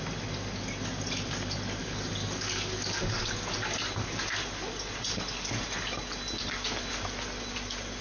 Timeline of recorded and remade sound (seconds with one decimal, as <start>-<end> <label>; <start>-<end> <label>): 0.0-1.8 recorded; 1.8-3.2 remade; 3.2-8.0 recorded